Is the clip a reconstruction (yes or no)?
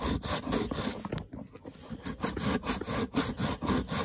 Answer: no